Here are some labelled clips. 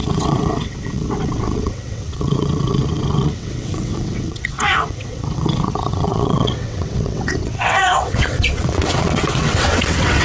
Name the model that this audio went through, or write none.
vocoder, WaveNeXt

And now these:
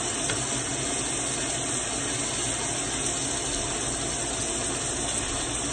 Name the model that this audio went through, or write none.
none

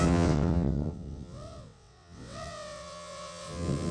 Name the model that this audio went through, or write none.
vocoder, WaveNeXt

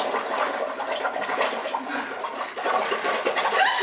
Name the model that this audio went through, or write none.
none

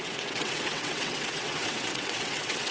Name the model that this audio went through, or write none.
vocoder, WaveNeXt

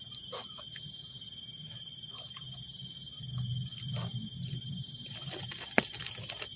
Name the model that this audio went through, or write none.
none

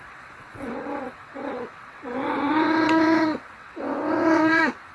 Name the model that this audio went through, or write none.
vocoder, WaveNeXt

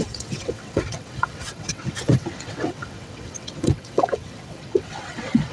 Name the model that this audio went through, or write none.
vocoder, WaveNeXt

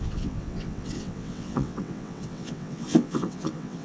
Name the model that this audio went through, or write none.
vocoder, WaveNeXt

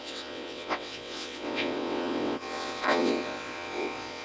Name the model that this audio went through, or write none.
vocoder, WaveNeXt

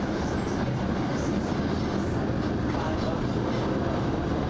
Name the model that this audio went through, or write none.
none